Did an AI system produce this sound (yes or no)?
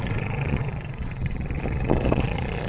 yes